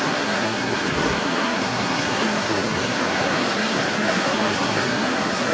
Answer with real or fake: fake